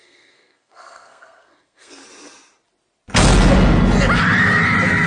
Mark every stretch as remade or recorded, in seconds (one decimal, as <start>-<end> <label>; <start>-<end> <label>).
0.0-2.0 remade; 2.0-5.1 recorded